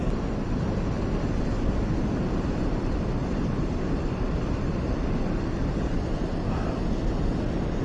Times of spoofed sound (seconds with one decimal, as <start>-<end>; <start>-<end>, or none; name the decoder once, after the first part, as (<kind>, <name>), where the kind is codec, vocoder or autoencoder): 3.2-6.7 (vocoder, BigVGAN v2)